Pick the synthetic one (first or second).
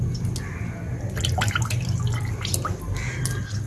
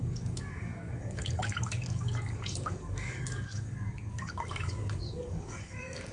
second